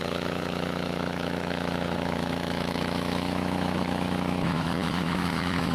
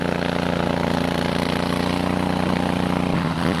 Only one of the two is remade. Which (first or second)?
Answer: first